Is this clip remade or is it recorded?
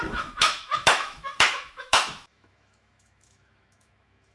remade